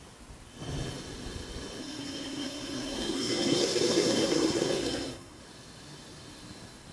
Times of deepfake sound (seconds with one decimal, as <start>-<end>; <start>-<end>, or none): 1.8-5.4